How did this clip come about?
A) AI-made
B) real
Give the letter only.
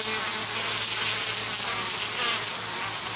B